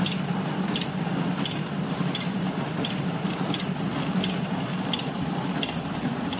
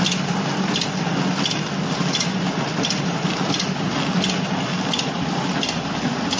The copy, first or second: first